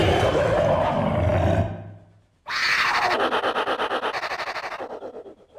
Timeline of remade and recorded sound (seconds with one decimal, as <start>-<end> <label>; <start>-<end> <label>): 0.0-5.6 recorded